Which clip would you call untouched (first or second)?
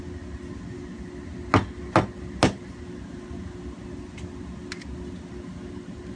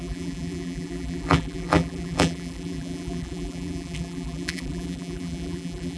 first